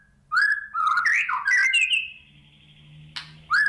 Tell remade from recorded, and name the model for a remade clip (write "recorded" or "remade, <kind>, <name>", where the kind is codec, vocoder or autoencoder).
recorded